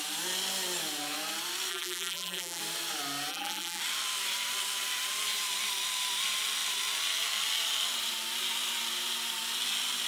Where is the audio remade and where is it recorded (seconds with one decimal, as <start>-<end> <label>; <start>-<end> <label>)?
0.0-1.7 recorded; 1.7-2.6 remade; 2.6-3.3 recorded; 3.3-3.8 remade; 3.8-10.1 recorded